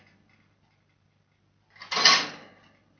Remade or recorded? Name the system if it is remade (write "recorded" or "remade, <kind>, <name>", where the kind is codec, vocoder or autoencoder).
recorded